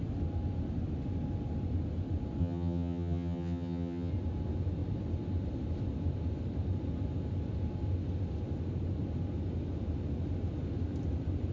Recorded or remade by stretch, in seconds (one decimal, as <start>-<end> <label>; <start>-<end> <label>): 0.0-2.4 recorded; 2.4-4.1 remade; 4.1-11.5 recorded